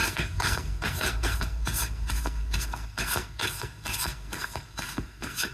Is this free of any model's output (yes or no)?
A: no